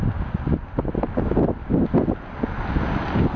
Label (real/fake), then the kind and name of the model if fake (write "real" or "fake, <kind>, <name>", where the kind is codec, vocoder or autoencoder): real